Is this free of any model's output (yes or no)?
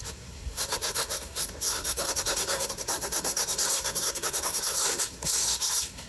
no